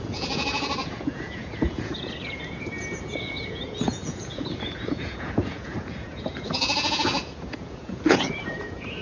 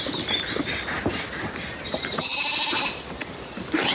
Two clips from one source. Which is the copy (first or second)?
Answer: first